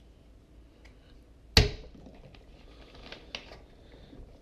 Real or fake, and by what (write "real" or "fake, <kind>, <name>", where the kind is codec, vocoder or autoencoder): real